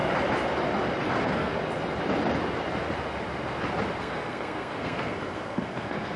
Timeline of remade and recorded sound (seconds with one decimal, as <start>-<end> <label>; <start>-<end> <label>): 0.0-1.1 recorded; 1.1-1.5 remade; 1.5-4.0 recorded; 4.0-6.2 remade